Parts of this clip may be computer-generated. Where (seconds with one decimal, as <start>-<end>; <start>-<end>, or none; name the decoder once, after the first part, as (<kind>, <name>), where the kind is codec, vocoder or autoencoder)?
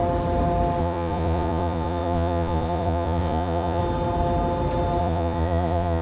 0.8-3.8 (vocoder, Vocos); 5.0-6.0